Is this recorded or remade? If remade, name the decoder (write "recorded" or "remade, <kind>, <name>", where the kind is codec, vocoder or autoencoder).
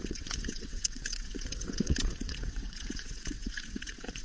remade, vocoder, WaveNeXt